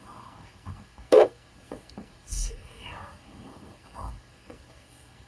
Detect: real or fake fake